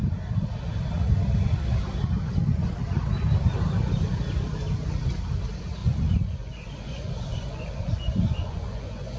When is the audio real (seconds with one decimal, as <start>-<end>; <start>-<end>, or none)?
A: 0.0-5.8